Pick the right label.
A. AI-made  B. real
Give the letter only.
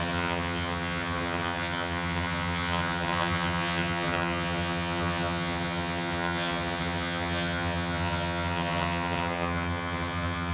A